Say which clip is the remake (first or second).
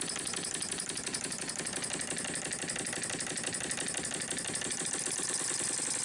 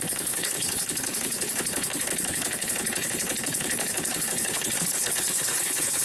second